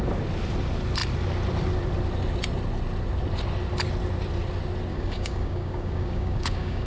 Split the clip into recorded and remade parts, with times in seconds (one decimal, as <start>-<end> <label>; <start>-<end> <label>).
0.0-4.9 recorded; 4.9-6.9 remade